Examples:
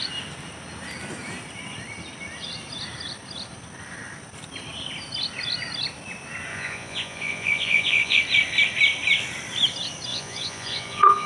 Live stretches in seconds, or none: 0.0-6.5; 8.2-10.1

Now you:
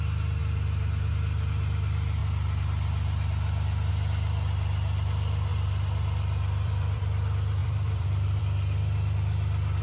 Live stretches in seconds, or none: 0.0-5.5; 7.0-7.6; 8.4-9.8

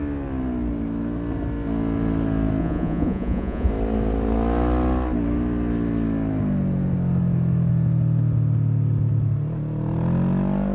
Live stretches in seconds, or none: 0.0-2.6; 3.7-10.7